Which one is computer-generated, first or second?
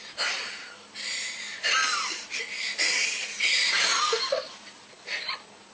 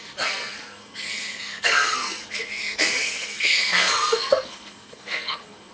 second